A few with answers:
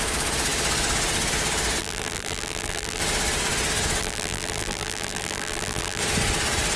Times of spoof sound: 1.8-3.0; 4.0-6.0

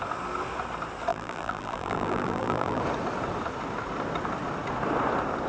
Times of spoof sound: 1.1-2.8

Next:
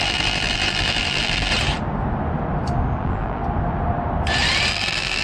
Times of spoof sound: 0.0-1.5; 3.0-3.4; 4.7-5.2